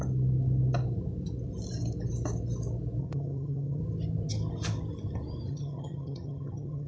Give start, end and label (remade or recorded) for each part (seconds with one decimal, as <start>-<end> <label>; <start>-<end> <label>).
0.0-3.0 recorded; 3.0-3.8 remade; 3.8-5.5 recorded; 5.5-6.9 remade